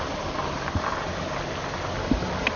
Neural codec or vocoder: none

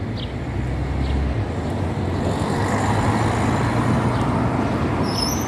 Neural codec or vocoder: none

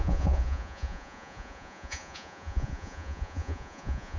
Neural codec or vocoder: vocoder, Vocos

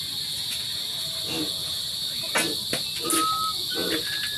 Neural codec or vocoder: none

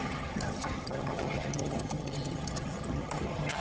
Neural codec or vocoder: vocoder, HiFi-GAN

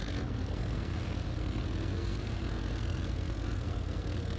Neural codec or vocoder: codec, SNAC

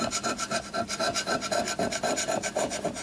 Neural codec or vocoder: none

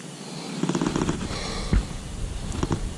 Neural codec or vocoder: none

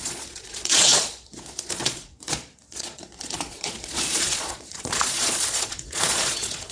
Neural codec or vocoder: vocoder, Vocos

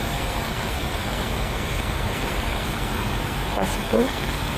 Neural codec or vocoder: codec, SNAC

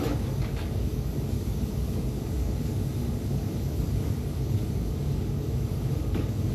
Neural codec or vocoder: codec, DAC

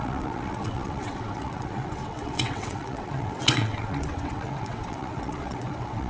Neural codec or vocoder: vocoder, WaveNeXt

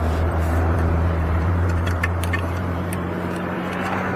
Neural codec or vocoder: vocoder, BigVGAN v2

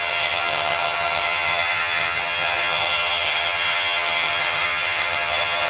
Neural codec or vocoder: vocoder, HiFi-GAN